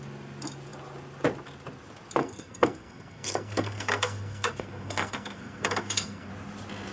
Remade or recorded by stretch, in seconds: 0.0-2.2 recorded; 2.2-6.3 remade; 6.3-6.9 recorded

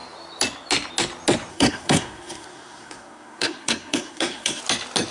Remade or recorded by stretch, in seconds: 0.0-1.5 recorded; 1.5-4.6 remade; 4.6-5.1 recorded